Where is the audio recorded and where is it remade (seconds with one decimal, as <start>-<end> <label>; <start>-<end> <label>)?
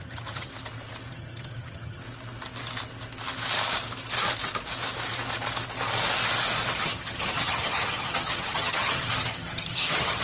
0.0-0.5 remade; 0.5-1.1 recorded; 1.1-2.0 remade; 2.0-6.8 recorded; 6.8-10.2 remade